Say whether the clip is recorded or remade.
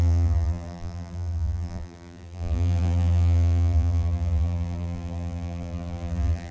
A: remade